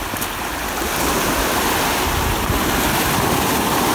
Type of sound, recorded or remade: recorded